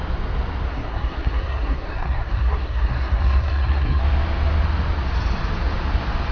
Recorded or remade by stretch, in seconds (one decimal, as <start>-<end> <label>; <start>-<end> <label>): 0.0-0.7 recorded; 0.7-4.0 remade; 4.0-6.3 recorded